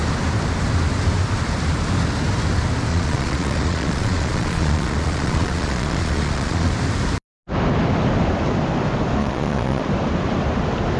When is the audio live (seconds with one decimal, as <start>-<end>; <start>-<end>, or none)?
0.0-2.9; 6.7-9.2; 9.8-11.0